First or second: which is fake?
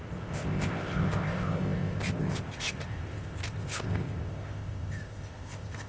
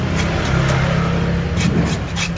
first